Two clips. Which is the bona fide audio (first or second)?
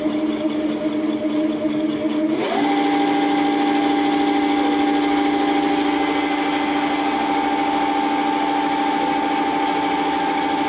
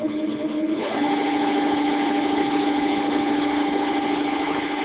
first